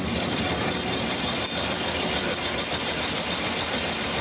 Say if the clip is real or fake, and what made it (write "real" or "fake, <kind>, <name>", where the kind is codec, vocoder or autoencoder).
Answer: real